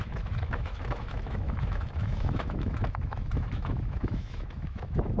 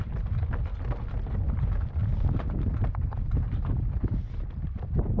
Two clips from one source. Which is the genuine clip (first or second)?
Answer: second